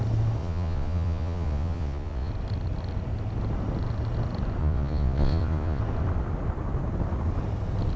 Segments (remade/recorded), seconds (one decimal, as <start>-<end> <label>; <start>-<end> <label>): 0.0-0.4 recorded; 0.4-2.3 remade; 2.3-4.6 recorded; 4.6-5.8 remade; 5.8-8.0 recorded